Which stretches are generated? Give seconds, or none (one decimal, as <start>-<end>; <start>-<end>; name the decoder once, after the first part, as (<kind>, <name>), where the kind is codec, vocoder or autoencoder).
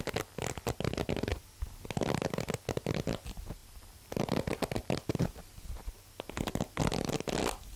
3.6-5.1 (vocoder, BigVGAN v2)